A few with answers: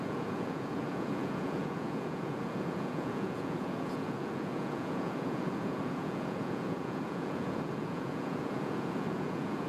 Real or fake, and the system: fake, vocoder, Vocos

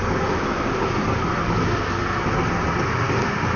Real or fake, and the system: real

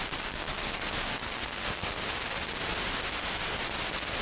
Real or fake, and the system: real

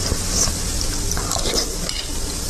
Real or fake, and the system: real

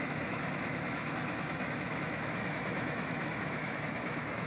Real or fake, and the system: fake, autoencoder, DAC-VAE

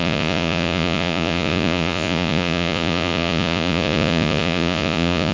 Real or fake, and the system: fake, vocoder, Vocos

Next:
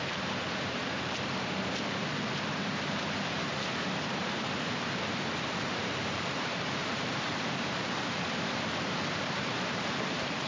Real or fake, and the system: fake, vocoder, BigVGAN v2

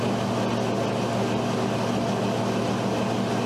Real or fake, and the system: real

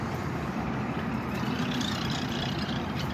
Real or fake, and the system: fake, vocoder, BigVGAN v2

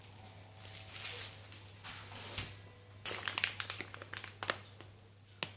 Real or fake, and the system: real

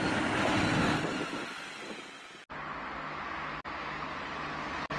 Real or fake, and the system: real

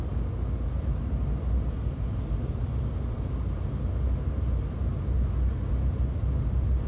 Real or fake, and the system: real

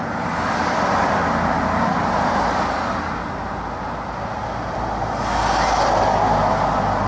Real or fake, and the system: real